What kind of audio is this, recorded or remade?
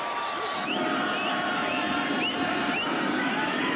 remade